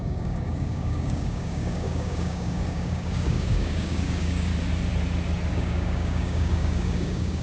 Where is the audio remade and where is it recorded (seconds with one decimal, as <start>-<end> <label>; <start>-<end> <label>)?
0.0-4.5 remade; 4.5-5.5 recorded; 5.5-7.4 remade

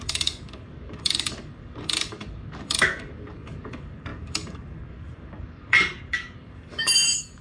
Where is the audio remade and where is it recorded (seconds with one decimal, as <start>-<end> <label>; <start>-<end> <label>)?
0.0-7.4 remade